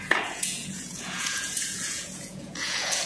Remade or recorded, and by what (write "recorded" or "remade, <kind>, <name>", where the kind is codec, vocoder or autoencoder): remade, vocoder, Vocos